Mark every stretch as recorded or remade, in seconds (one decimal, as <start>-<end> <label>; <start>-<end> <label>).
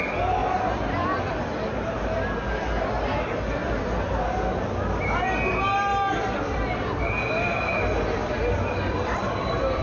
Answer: 0.0-3.6 recorded; 3.6-4.1 remade; 4.1-5.9 recorded; 5.9-7.0 remade; 7.0-8.2 recorded; 8.2-9.8 remade